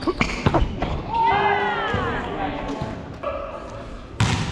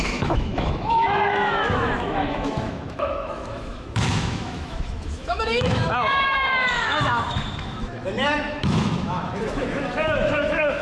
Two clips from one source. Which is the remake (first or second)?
second